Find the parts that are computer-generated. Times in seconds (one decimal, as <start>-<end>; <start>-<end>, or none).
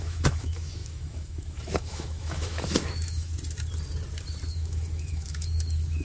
0.0-3.3; 4.5-6.0